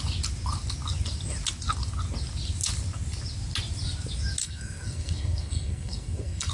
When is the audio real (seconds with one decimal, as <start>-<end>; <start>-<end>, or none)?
0.0-4.4